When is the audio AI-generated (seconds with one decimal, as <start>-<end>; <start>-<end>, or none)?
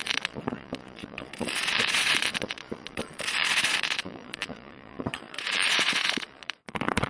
0.0-7.1